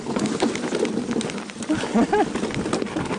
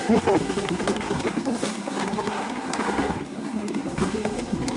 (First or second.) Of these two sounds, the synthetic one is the second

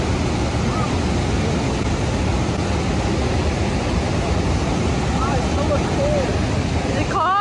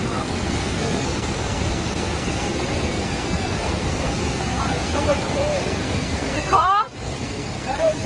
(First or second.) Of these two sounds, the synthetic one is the second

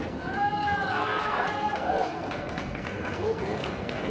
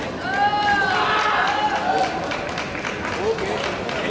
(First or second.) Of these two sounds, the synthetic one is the first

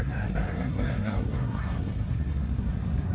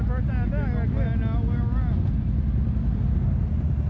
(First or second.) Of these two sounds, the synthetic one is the first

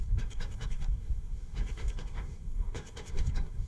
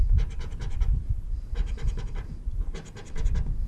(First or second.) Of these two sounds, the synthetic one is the first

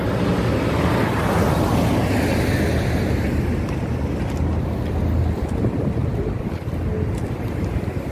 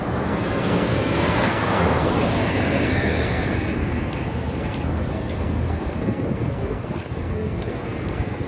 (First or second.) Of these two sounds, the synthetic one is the second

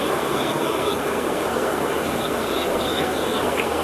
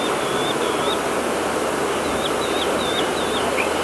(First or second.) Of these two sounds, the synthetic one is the first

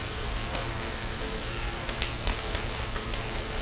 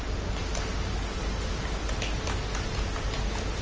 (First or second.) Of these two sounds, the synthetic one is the first